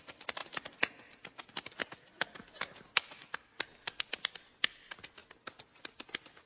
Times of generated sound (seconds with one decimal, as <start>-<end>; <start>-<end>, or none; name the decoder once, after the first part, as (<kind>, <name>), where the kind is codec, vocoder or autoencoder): none